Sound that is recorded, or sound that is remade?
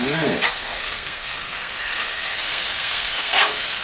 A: remade